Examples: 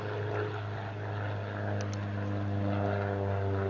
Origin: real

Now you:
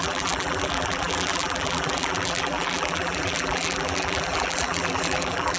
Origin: fake